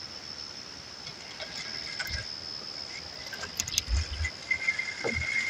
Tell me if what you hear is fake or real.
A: real